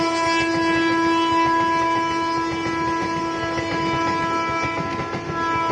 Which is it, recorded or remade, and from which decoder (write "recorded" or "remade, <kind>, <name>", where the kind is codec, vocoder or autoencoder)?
recorded